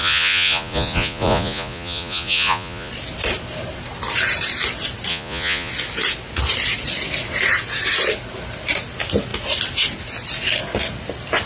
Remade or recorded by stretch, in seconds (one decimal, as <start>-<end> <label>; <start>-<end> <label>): 0.0-2.9 remade; 2.9-5.1 recorded; 5.1-5.7 remade; 5.7-11.5 recorded